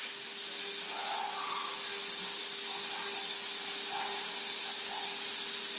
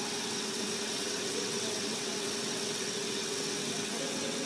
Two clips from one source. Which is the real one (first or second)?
first